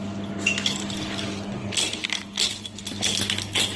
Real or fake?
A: real